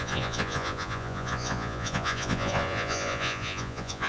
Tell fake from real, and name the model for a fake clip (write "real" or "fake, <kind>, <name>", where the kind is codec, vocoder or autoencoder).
fake, vocoder, Vocos